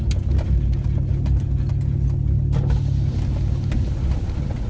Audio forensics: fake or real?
real